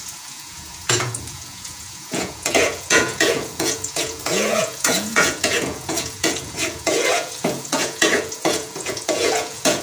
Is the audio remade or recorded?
remade